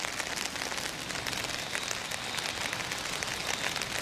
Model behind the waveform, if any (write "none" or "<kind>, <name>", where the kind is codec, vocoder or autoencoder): none